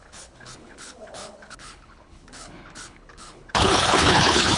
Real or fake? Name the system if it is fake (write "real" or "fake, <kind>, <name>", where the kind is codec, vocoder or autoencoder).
fake, codec, HILCodec